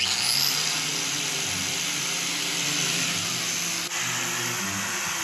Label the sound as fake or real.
real